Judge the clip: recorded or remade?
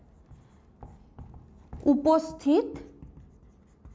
recorded